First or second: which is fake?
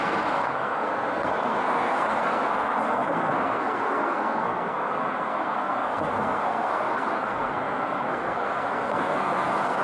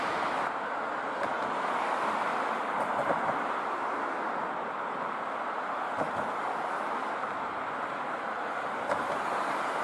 first